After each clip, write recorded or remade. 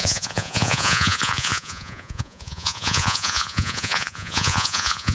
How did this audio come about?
remade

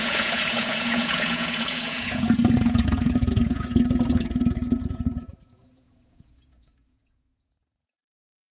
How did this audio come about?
remade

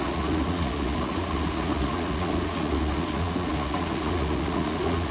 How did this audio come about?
remade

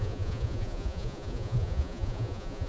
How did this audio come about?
remade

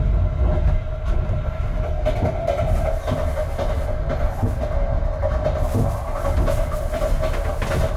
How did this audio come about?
recorded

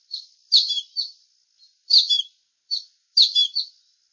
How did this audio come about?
recorded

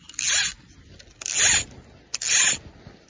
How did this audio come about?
recorded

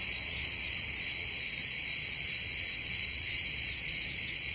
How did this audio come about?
remade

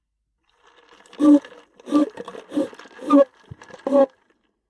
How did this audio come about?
recorded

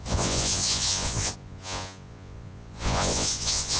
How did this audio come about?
remade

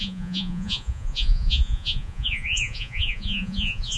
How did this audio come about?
remade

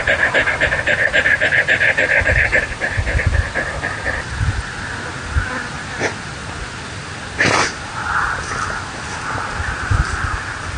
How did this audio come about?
recorded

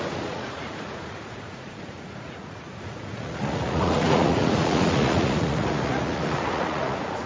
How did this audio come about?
remade